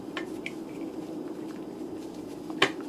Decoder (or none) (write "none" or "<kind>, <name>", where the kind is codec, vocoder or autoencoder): none